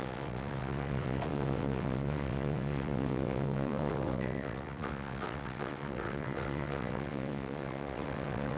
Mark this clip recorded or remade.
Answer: remade